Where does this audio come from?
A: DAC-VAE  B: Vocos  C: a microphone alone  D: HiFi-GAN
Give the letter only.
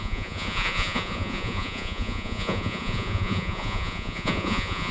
B